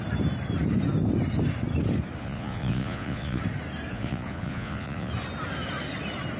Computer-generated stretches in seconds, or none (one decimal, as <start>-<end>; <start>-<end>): 2.2-3.4; 3.9-5.1